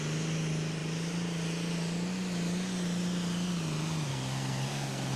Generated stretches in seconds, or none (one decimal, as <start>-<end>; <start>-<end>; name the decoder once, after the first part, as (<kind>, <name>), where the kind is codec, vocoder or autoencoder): 4.1-5.2 (codec, SNAC)